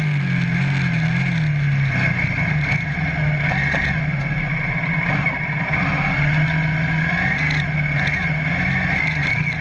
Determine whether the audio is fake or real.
real